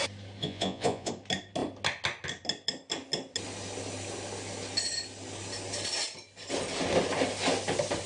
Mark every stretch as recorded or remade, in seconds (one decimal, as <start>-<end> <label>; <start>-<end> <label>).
0.0-0.4 recorded; 0.4-1.1 remade; 1.1-8.1 recorded